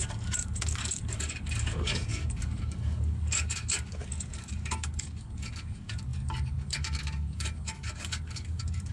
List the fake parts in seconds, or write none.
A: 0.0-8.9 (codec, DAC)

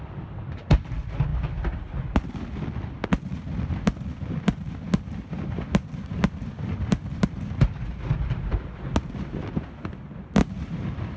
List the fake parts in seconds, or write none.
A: none

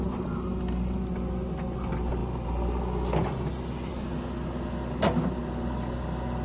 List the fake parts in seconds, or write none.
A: none